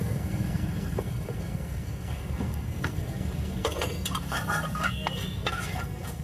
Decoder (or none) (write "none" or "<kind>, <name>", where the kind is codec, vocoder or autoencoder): codec, SNAC